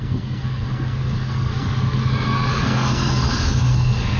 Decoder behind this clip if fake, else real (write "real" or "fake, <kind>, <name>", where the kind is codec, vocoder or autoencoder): fake, codec, SNAC